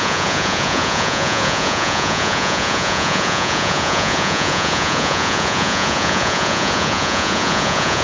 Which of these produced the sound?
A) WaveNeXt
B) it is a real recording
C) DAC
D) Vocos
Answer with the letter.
D